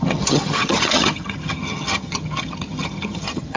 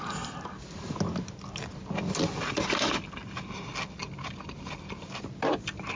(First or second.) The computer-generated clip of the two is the first